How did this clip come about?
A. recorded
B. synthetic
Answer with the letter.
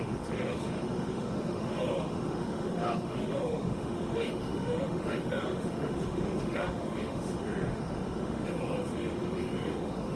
B